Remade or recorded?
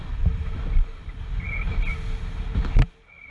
recorded